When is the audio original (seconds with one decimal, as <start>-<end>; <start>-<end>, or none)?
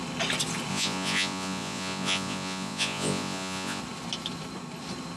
0.0-0.7; 3.8-5.2